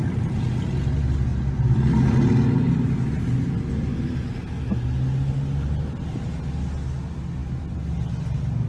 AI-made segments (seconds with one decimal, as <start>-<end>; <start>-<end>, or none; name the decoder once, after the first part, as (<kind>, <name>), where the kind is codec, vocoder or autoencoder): none